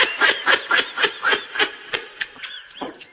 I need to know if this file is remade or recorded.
remade